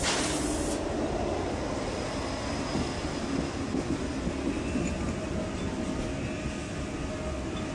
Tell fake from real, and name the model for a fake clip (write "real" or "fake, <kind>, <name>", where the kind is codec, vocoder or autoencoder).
real